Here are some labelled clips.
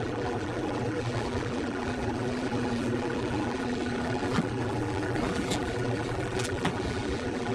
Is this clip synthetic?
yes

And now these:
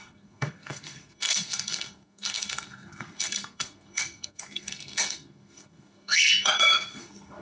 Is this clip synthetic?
yes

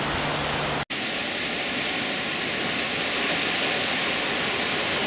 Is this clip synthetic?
no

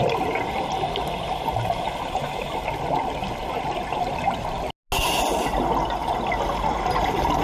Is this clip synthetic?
no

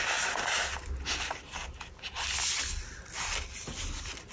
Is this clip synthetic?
no